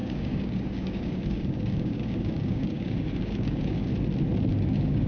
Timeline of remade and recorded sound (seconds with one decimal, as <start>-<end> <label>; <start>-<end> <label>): 0.0-3.9 remade; 3.9-4.5 recorded; 4.5-5.1 remade